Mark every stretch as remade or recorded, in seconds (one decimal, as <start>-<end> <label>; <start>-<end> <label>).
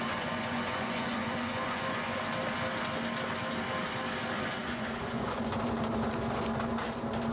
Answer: 0.0-2.2 remade; 2.2-4.6 recorded; 4.6-5.4 remade; 5.4-7.3 recorded